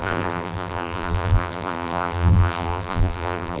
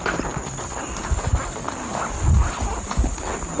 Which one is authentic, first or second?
second